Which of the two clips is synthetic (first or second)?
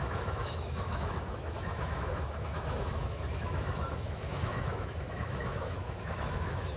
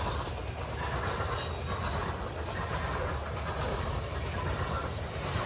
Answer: first